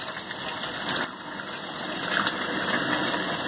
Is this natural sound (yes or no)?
yes